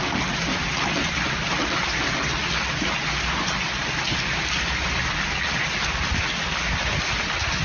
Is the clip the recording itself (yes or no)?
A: yes